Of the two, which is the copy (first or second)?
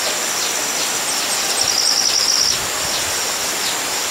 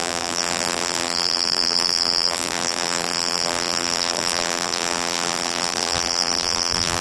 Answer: second